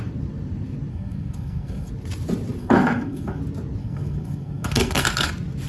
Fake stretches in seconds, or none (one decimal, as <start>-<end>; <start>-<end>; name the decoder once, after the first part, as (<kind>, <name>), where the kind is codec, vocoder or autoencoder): 0.9-1.9 (codec, SNAC); 2.6-3.4; 3.8-5.3